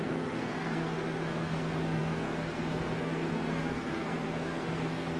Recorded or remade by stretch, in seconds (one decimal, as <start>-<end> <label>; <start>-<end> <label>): 0.0-5.2 remade